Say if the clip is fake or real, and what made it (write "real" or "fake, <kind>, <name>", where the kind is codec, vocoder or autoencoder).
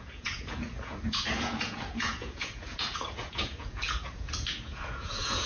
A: fake, vocoder, Vocos